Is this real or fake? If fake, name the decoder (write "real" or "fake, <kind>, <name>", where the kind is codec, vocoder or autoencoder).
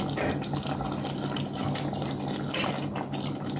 real